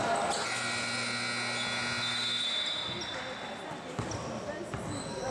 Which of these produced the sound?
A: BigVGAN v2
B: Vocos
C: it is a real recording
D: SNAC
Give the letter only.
C